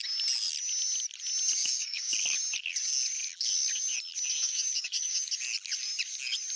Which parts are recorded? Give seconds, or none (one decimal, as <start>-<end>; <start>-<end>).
0.0-1.6; 2.1-4.4; 5.3-6.6